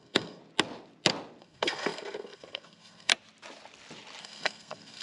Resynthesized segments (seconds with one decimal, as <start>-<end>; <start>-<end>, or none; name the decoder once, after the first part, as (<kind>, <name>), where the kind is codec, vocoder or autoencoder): 0.0-0.4 (codec, SNAC); 1.4-3.1; 4.2-5.0